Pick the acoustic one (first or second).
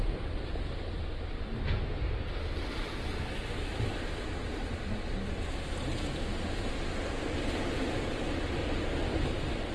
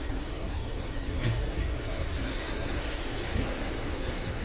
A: first